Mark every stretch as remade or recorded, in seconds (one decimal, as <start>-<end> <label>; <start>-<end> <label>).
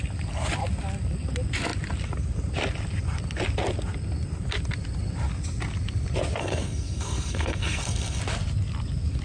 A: 0.0-6.4 recorded; 6.4-8.2 remade; 8.2-9.2 recorded